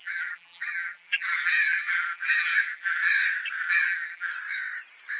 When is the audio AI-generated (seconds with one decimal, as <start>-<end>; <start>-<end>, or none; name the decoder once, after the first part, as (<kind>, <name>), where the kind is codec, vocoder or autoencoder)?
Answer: 0.0-3.1 (vocoder, BigVGAN v2); 3.6-4.3